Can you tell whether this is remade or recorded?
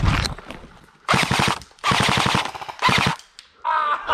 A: recorded